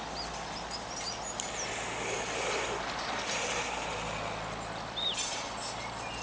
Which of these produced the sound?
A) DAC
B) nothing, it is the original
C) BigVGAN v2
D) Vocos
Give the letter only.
B